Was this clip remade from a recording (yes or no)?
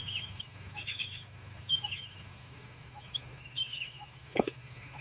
yes